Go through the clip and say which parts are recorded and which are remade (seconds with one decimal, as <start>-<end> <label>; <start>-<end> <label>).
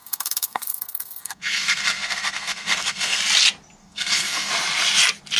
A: 0.0-3.2 remade; 3.2-3.8 recorded; 3.8-4.5 remade; 4.5-5.4 recorded